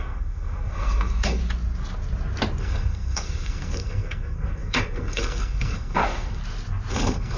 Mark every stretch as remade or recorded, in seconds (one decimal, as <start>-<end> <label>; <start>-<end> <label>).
0.0-1.4 remade; 1.4-2.6 recorded; 2.6-6.4 remade; 6.4-6.9 recorded; 6.9-7.4 remade